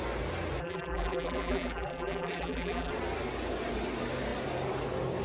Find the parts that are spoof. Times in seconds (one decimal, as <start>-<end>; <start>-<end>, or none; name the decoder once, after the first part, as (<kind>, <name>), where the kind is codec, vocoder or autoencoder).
0.6-2.9 (vocoder, BigVGAN v2)